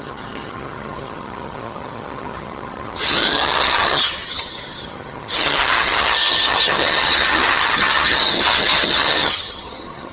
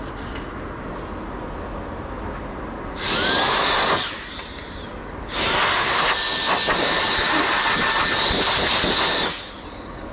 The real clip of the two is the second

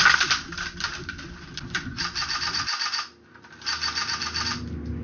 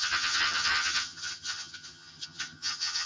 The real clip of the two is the first